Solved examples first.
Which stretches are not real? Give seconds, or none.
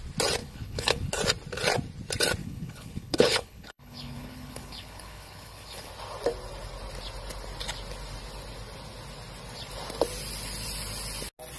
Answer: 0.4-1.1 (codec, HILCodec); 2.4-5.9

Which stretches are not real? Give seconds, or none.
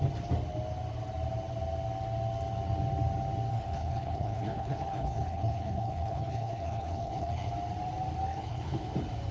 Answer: 3.5-7.5 (codec, HILCodec); 8.3-8.9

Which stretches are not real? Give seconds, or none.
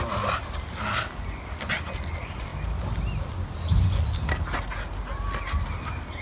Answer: none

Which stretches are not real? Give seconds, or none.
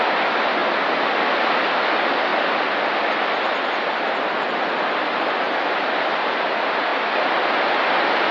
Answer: none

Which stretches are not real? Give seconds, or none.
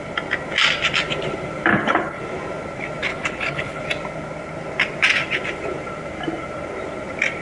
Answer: 1.7-2.2 (codec, HILCodec); 3.1-3.8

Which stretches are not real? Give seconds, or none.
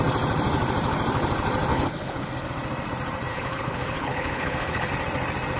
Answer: 1.7-2.3 (codec, HILCodec); 3.3-4.9